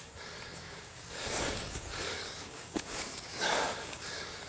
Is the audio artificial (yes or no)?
yes